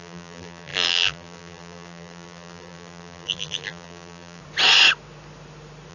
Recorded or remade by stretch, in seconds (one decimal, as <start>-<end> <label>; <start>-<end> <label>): 0.0-4.4 remade; 4.4-5.9 recorded